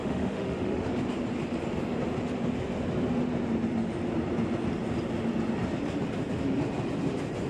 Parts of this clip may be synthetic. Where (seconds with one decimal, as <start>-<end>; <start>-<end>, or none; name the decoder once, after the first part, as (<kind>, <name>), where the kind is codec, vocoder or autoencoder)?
0.0-0.9 (autoencoder, DAC-VAE)